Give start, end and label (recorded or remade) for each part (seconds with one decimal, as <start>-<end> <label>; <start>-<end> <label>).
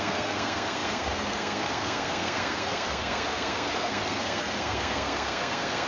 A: 0.0-5.9 remade